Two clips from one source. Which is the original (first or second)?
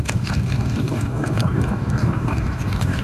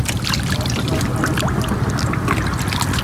second